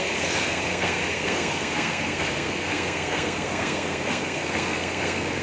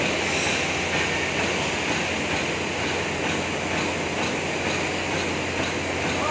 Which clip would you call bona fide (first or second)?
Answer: second